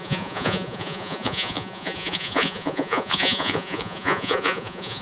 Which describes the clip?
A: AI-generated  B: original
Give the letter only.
A